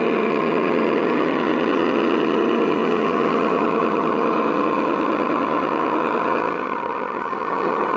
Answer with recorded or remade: remade